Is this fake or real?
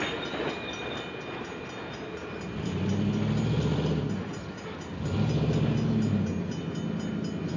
real